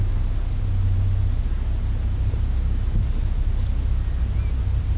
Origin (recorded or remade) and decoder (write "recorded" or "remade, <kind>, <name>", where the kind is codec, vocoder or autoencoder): recorded